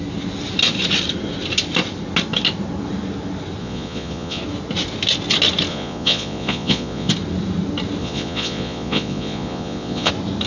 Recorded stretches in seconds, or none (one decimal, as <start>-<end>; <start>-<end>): 0.0-3.6; 4.4-5.7; 7.1-8.0; 10.1-10.5